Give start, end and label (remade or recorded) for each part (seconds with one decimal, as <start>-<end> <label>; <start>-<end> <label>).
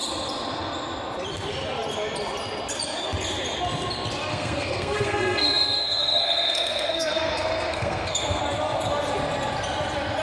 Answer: 0.0-4.3 recorded; 4.3-8.4 remade; 8.4-10.2 recorded